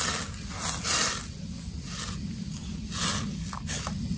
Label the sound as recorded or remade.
recorded